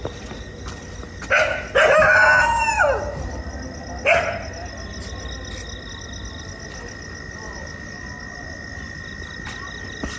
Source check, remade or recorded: recorded